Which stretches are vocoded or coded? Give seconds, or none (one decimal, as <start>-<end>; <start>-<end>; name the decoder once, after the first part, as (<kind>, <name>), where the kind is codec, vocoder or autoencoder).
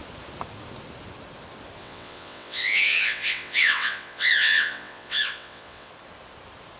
1.8-5.9 (vocoder, WaveNeXt)